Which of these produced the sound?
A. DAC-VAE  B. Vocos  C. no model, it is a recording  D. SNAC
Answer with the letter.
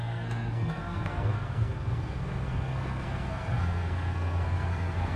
D